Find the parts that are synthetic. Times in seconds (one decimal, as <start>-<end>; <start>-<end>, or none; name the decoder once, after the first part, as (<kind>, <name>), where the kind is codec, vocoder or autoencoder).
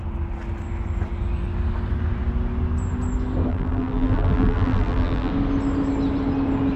3.5-5.3 (vocoder, BigVGAN v2)